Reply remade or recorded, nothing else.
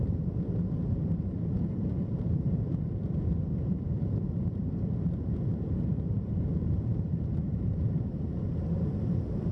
remade